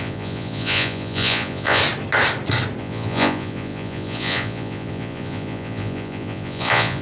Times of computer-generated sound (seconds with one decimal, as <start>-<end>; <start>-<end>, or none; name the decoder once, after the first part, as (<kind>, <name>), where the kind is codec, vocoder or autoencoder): 0.0-1.8 (vocoder, Vocos); 2.8-7.0